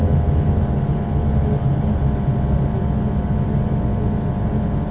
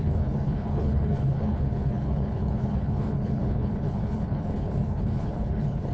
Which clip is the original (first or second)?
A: first